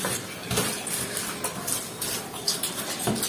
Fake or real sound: real